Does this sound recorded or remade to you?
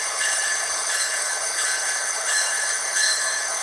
remade